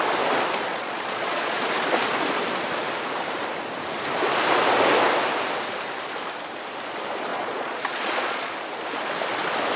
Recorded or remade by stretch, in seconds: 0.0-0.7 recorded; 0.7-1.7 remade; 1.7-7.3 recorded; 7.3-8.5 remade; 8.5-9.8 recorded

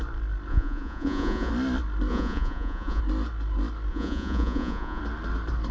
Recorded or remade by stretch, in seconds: 0.0-0.5 recorded; 0.5-1.5 remade; 1.5-2.1 recorded; 2.1-3.0 remade; 3.0-3.9 recorded; 3.9-5.0 remade; 5.0-5.7 recorded

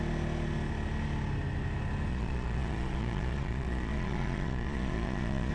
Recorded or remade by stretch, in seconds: 0.0-2.1 recorded; 2.1-5.5 remade

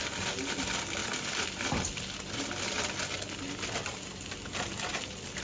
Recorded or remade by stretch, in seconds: 0.0-5.4 recorded

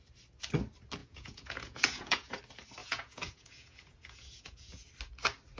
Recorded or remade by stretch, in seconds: 0.0-1.0 recorded; 1.0-2.4 remade; 2.4-2.8 recorded; 2.8-4.9 remade; 4.9-5.6 recorded

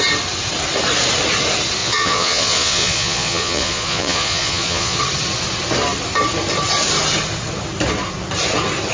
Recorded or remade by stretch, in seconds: 0.0-1.8 recorded; 1.8-5.0 remade; 5.0-8.9 recorded

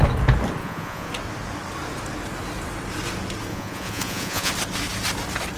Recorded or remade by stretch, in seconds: 0.0-0.6 recorded; 0.6-1.1 remade; 1.1-3.5 recorded; 3.5-4.5 remade; 4.5-5.6 recorded